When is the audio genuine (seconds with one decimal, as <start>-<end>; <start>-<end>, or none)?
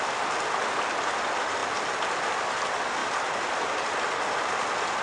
0.0-5.0